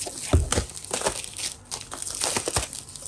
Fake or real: real